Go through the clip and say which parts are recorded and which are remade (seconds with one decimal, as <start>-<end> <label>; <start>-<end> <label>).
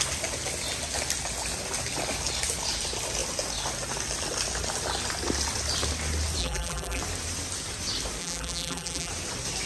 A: 0.0-6.4 recorded; 6.4-7.0 remade; 7.0-8.2 recorded; 8.2-9.1 remade; 9.1-9.7 recorded